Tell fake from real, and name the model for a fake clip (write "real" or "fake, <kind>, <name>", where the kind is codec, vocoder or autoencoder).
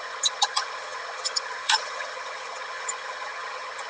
fake, vocoder, HiFi-GAN